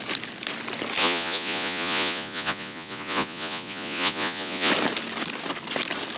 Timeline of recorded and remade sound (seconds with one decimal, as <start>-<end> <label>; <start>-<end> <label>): 0.0-1.0 recorded; 1.0-4.7 remade; 4.7-6.2 recorded